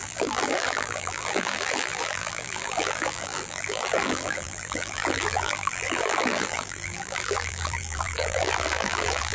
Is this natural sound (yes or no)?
no